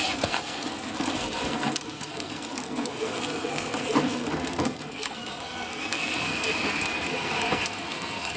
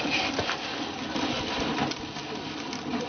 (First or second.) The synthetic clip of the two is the first